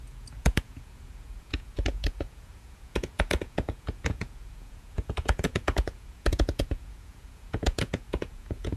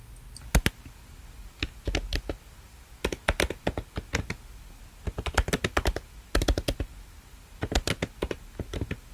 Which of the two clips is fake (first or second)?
first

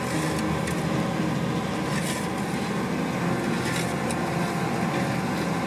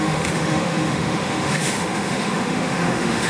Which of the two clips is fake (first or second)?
second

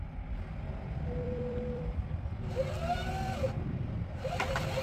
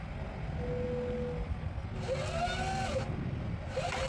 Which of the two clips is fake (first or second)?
first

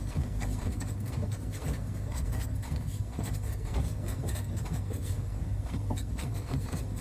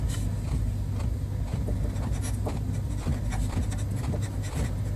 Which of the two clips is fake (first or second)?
first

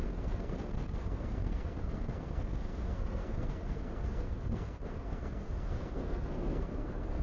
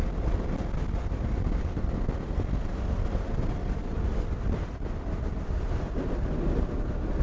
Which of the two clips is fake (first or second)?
first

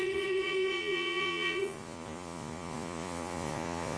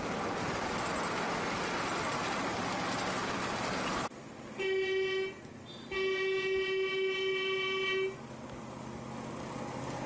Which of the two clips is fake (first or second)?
first